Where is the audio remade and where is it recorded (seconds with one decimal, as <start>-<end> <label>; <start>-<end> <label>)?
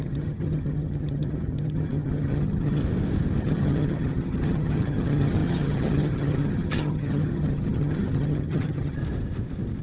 0.0-2.8 remade; 2.8-3.4 recorded; 3.4-9.0 remade; 9.0-9.8 recorded